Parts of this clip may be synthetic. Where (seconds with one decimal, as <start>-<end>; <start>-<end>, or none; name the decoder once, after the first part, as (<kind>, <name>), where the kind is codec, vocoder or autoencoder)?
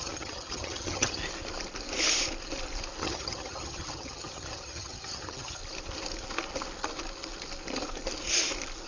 0.0-1.2 (vocoder, HiFi-GAN); 3.0-5.6